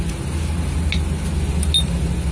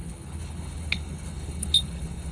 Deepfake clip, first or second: second